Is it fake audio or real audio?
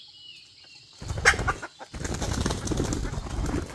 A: real